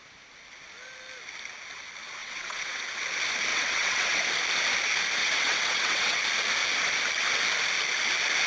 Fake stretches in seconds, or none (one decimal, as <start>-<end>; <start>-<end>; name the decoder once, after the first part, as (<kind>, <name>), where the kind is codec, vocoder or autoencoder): 2.2-2.8 (vocoder, WaveNeXt); 3.5-4.2; 5.2-6.2